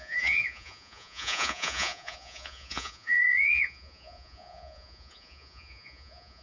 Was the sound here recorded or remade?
remade